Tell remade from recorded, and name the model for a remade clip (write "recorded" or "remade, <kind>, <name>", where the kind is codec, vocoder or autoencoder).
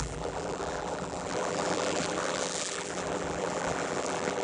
remade, vocoder, BigVGAN v2